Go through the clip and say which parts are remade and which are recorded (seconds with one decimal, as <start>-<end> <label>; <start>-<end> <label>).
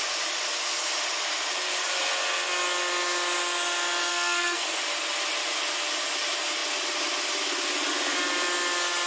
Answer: 0.0-4.1 recorded; 4.1-4.8 remade; 4.8-9.1 recorded